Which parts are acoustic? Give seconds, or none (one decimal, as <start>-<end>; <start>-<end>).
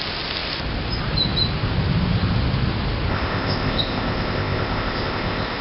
0.0-3.1